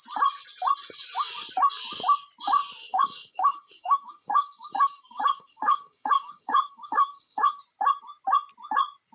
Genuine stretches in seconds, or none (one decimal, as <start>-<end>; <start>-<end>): 0.0-2.6; 7.6-9.1